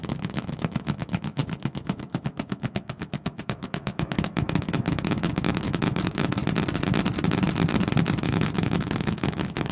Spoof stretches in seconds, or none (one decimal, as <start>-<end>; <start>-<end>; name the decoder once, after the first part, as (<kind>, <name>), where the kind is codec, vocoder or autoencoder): 0.0-6.4 (autoencoder, DAC-VAE); 8.2-9.7